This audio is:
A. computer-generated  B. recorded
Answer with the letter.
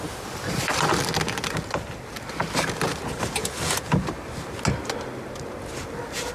B